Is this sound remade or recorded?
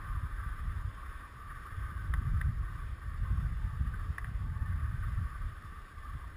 remade